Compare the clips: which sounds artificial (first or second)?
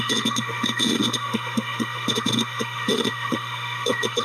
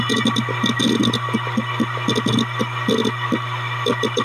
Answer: first